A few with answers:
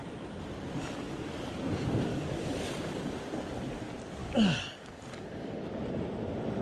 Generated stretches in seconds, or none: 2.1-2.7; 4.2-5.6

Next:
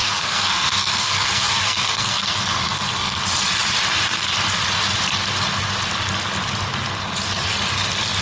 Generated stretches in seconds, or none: 0.0-3.2

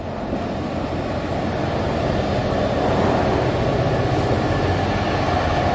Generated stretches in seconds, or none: none

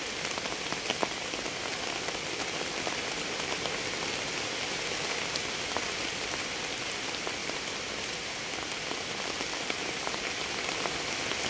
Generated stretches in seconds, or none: none

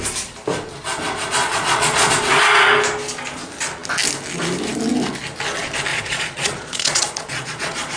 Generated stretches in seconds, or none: 1.4-2.1; 5.9-8.0

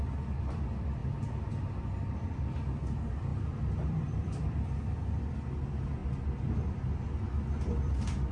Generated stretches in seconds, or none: 1.0-1.8; 3.3-4.6